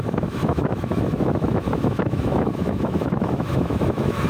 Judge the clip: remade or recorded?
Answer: remade